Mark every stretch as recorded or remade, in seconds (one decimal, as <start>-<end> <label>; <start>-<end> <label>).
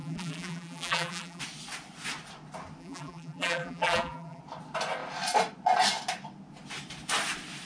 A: 0.0-1.4 remade; 1.4-2.8 recorded; 2.8-4.4 remade; 4.4-7.7 recorded